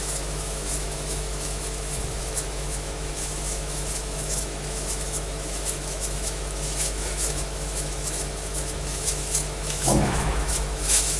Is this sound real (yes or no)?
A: no